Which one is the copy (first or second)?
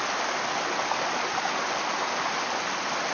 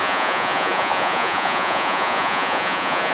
second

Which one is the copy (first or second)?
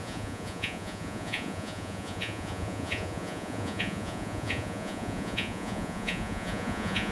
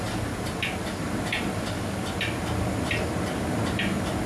first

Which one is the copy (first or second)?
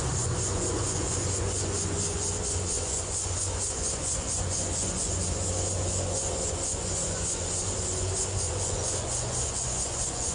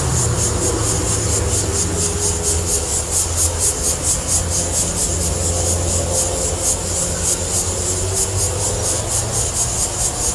first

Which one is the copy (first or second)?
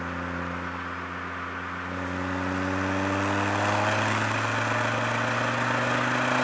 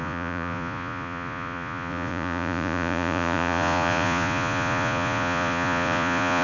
second